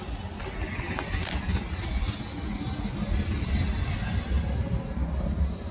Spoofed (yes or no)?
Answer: no